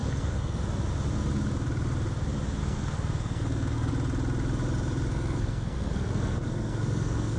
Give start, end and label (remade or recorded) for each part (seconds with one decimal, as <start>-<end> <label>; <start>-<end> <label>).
0.0-0.6 remade; 0.6-2.6 recorded; 2.6-3.9 remade; 3.9-5.1 recorded; 5.1-7.4 remade